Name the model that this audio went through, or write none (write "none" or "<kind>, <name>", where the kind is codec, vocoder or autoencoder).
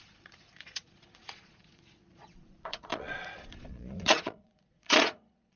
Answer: vocoder, Vocos